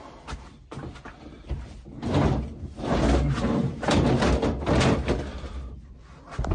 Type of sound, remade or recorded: recorded